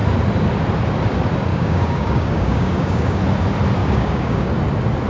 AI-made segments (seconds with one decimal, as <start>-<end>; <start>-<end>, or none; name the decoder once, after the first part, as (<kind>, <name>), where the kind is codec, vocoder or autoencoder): 1.5-3.2 (codec, DAC); 3.8-4.5